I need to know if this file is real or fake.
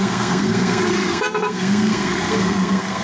fake